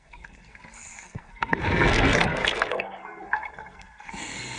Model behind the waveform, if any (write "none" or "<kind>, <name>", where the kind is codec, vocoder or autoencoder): codec, SNAC